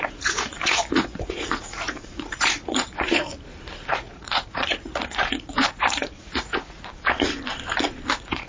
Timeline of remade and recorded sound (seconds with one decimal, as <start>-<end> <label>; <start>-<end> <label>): 0.0-3.3 remade; 3.3-3.9 recorded; 3.9-6.9 remade; 6.9-8.1 recorded; 8.1-8.5 remade